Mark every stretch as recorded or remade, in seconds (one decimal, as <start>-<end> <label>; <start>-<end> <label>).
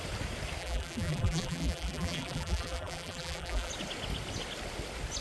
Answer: 0.0-0.6 recorded; 0.6-3.7 remade; 3.7-5.2 recorded